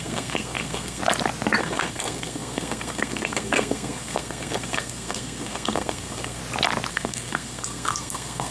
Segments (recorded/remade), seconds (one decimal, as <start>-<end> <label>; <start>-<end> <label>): 0.0-1.0 remade; 1.0-1.6 recorded; 1.6-6.4 remade; 6.4-6.9 recorded; 6.9-8.5 remade

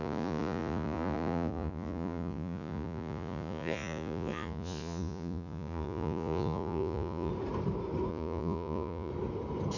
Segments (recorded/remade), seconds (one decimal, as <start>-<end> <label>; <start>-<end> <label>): 0.0-7.3 remade; 7.3-8.1 recorded; 8.1-9.1 remade; 9.1-9.8 recorded

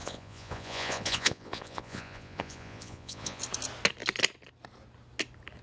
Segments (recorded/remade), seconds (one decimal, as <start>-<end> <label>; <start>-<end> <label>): 0.0-3.4 remade; 3.4-5.6 recorded

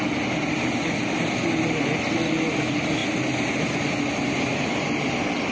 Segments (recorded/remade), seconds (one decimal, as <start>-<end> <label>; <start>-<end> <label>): 0.0-5.5 recorded

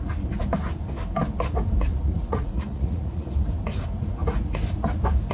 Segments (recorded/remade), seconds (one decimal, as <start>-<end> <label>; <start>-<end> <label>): 0.0-1.9 recorded; 1.9-3.4 remade; 3.4-5.3 recorded

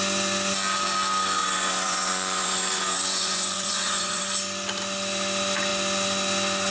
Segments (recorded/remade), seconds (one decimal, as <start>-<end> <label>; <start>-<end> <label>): 0.0-1.4 recorded; 1.4-4.2 remade; 4.2-6.7 recorded

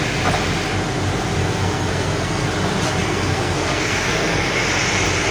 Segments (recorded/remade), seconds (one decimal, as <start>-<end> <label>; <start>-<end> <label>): 0.0-1.4 recorded; 1.4-2.5 remade; 2.5-3.0 recorded; 3.0-4.5 remade; 4.5-5.3 recorded